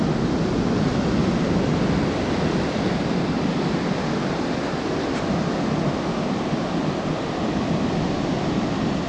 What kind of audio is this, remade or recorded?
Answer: recorded